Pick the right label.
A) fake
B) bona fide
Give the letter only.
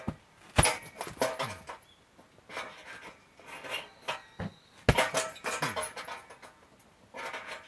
B